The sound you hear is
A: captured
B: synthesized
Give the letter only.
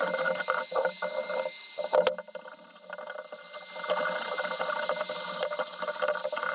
A